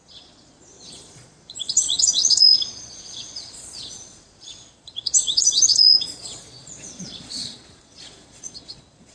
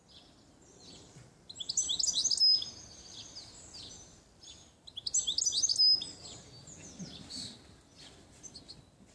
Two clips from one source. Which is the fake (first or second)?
first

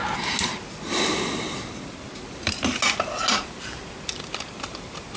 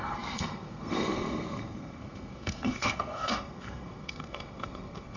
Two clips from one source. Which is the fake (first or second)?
second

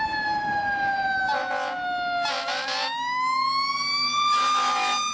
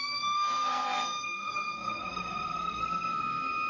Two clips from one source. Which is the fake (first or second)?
second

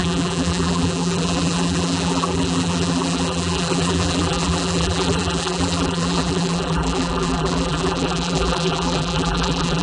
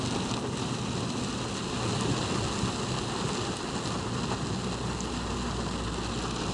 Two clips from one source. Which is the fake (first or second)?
first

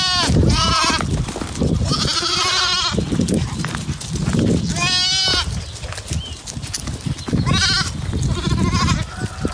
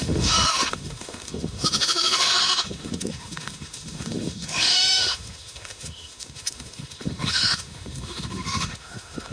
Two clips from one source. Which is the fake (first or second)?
second